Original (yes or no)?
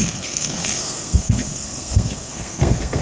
no